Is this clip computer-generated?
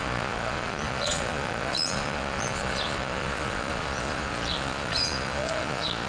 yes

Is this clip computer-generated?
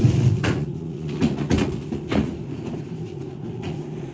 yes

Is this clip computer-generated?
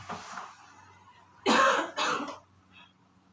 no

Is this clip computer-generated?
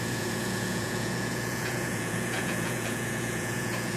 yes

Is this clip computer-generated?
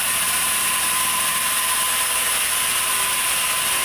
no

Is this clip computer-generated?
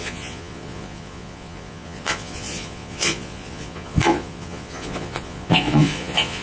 yes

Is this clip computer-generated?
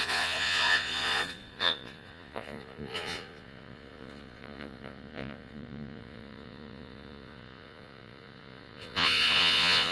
yes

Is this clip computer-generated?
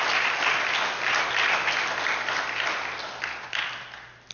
no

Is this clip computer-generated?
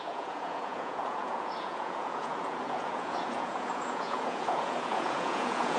yes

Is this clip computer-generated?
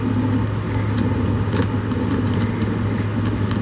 no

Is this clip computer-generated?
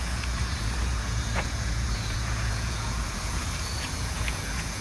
yes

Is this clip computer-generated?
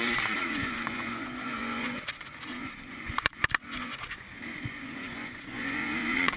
yes